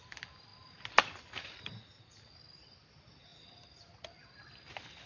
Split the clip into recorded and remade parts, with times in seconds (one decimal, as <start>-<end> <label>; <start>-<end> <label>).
0.0-5.1 recorded